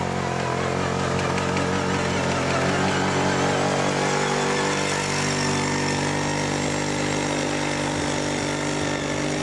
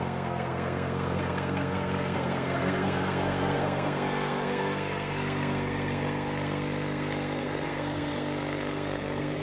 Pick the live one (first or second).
first